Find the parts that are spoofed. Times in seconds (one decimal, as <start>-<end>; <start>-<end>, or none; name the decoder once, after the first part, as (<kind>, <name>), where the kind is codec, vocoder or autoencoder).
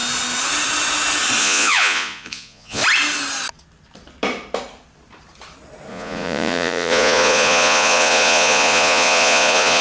1.4-2.8 (vocoder, Vocos); 5.9-9.8